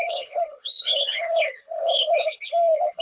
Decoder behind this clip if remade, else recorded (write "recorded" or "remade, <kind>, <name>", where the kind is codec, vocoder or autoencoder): remade, codec, HILCodec